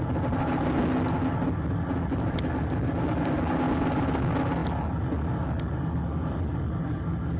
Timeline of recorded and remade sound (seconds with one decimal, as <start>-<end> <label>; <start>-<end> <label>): 0.0-7.4 recorded